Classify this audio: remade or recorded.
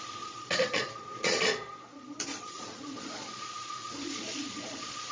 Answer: remade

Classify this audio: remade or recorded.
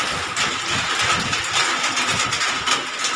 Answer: recorded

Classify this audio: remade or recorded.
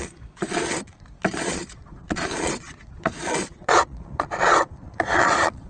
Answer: remade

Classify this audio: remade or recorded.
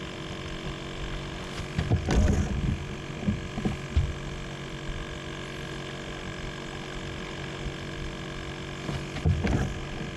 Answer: recorded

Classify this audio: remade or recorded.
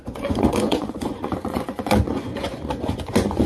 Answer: remade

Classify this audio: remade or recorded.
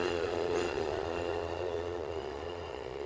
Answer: remade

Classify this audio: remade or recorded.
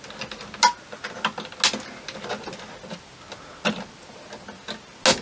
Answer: recorded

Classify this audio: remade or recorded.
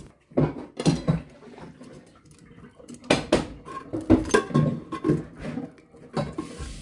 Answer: recorded